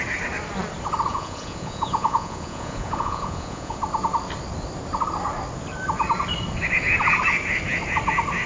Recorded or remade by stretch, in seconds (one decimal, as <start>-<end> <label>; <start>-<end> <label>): 0.0-1.1 recorded; 1.1-3.8 remade; 3.8-8.5 recorded